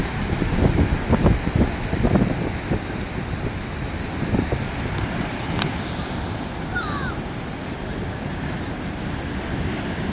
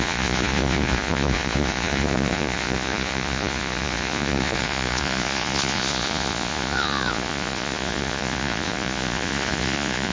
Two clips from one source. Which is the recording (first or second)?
first